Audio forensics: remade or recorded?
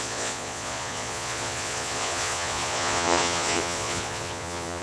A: remade